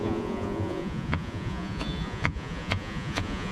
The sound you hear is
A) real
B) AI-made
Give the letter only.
B